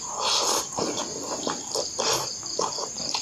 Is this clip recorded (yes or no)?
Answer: yes